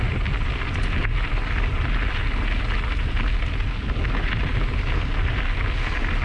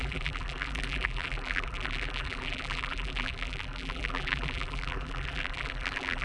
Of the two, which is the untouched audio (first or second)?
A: first